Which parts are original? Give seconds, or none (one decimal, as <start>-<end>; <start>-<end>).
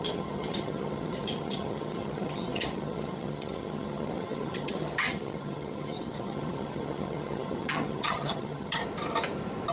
8.8-9.7